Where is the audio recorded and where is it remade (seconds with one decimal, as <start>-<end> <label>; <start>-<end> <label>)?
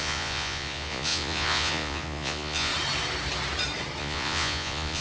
0.0-2.7 remade; 2.7-4.0 recorded; 4.0-5.0 remade